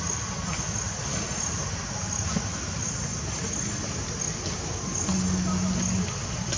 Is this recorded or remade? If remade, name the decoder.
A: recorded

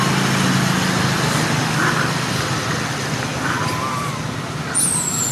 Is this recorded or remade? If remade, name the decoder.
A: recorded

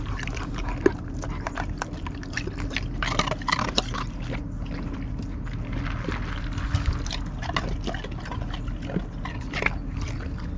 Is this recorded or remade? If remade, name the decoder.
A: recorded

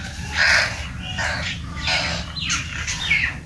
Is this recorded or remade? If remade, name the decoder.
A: recorded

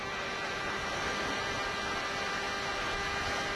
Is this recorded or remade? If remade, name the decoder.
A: recorded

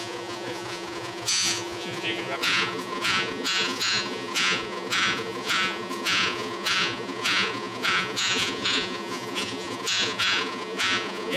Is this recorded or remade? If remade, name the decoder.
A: remade, vocoder, Vocos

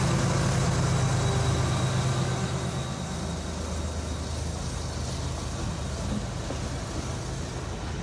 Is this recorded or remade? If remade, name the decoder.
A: recorded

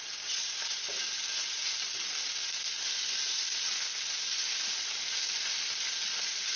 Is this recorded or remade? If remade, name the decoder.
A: recorded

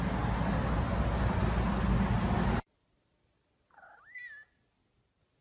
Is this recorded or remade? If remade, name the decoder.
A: recorded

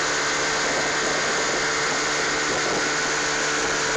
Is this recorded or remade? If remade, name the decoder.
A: recorded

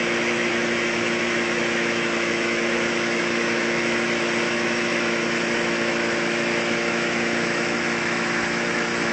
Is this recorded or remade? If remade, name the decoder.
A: remade, autoencoder, DAC-VAE